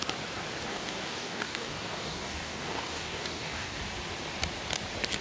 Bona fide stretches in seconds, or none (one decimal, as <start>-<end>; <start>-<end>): 0.0-0.7; 3.8-5.2